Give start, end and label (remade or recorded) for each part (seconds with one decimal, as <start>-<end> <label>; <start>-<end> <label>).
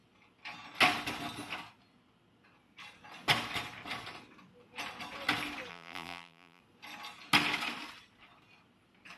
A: 0.0-5.7 recorded; 5.7-6.6 remade; 6.6-9.2 recorded